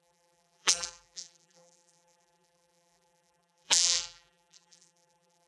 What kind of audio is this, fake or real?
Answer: fake